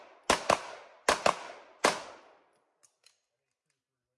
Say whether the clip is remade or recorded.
recorded